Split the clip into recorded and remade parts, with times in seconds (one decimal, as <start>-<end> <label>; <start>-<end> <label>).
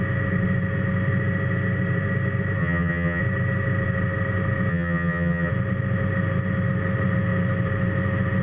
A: 0.0-2.6 recorded; 2.6-3.2 remade; 3.2-4.7 recorded; 4.7-5.5 remade; 5.5-8.4 recorded